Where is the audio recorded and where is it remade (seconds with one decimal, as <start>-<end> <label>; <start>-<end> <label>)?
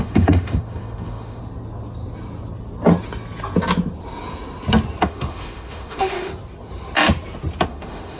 0.0-1.4 remade; 1.4-5.0 recorded; 5.0-6.3 remade; 6.3-7.7 recorded; 7.7-8.2 remade